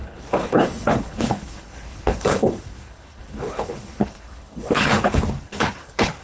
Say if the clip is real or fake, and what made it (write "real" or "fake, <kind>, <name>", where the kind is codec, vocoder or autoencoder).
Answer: fake, codec, HILCodec